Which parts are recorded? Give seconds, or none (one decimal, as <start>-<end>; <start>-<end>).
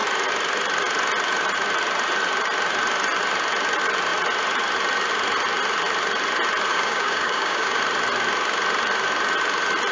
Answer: 0.0-6.7; 7.8-9.9